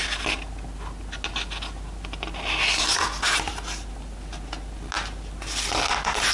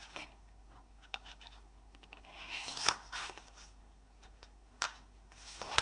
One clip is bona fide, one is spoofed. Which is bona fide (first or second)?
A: first